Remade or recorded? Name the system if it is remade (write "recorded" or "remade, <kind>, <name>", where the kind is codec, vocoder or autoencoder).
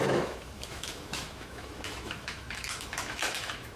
remade, autoencoder, DAC-VAE